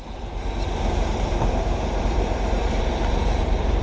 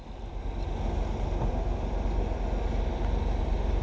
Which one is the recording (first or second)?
second